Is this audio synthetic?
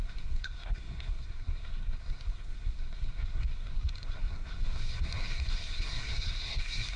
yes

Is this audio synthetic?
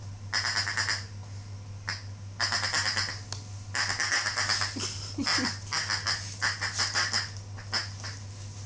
no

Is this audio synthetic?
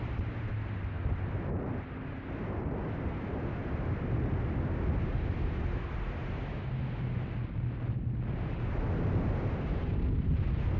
no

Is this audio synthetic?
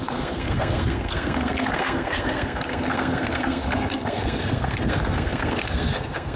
yes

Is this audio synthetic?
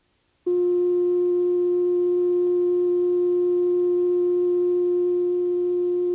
no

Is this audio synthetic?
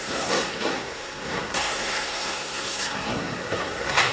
yes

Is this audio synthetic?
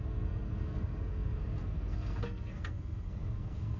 yes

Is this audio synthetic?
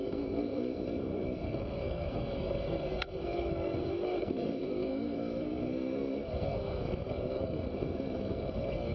yes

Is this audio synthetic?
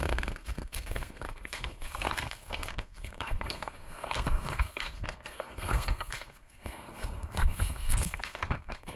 yes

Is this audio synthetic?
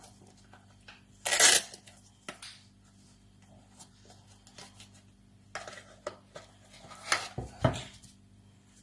no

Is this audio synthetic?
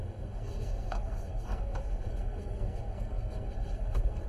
yes